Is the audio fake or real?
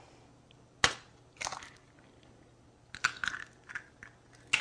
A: real